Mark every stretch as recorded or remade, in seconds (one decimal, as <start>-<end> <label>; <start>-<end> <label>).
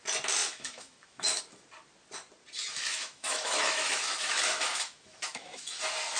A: 0.0-0.4 recorded; 0.4-1.4 remade; 1.4-2.7 recorded; 2.7-5.8 remade; 5.8-6.2 recorded